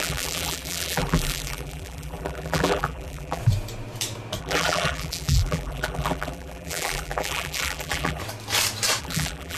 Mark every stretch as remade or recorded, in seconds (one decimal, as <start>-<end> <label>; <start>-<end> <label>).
0.0-3.4 remade; 3.4-4.4 recorded; 4.4-8.2 remade; 8.2-9.0 recorded; 9.0-9.6 remade